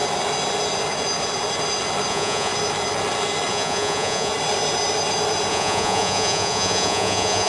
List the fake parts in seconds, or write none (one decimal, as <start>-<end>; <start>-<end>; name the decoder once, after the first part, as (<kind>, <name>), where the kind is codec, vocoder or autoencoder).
2.1-2.5 (vocoder, Vocos); 3.5-4.3; 5.5-7.5